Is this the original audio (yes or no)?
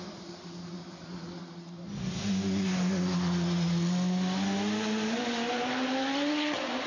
yes